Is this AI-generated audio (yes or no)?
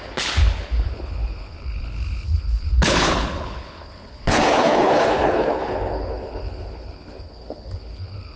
yes